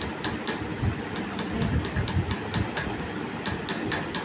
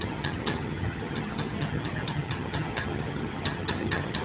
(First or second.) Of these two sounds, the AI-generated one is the second